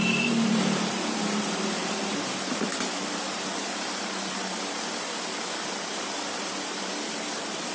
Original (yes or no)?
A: no